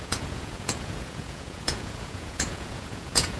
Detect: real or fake fake